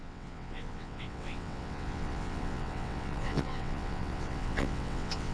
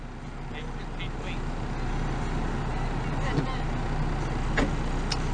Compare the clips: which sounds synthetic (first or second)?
first